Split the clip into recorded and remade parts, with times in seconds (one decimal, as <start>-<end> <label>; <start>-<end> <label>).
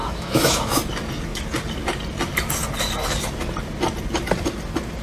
0.0-0.8 remade; 0.8-5.0 recorded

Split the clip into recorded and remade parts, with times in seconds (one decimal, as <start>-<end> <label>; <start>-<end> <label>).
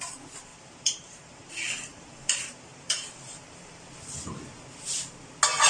0.0-0.5 recorded; 0.5-1.4 remade; 1.4-1.9 recorded; 1.9-3.9 remade; 3.9-5.7 recorded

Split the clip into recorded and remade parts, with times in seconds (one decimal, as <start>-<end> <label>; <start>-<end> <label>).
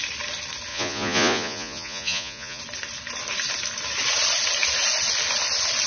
0.0-0.7 recorded; 0.7-2.6 remade; 2.6-5.9 recorded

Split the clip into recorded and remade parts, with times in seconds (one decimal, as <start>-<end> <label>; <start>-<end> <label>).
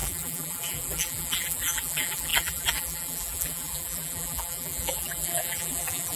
0.0-6.2 remade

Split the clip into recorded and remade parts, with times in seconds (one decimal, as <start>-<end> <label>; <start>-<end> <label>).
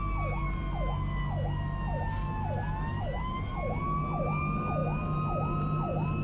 0.0-6.2 recorded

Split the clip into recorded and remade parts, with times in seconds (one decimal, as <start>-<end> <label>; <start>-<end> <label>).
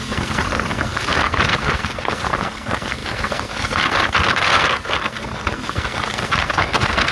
0.0-7.1 remade